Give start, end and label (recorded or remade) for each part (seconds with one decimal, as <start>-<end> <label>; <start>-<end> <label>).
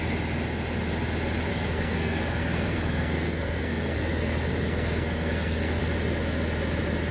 0.0-1.5 recorded; 1.5-5.8 remade; 5.8-7.1 recorded